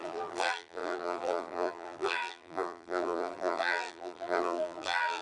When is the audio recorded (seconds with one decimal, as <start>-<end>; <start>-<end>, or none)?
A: none